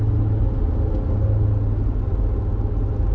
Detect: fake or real real